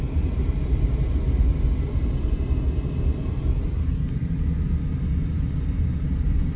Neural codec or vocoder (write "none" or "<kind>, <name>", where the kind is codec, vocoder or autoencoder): none